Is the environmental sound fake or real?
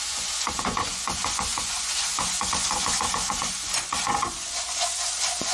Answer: fake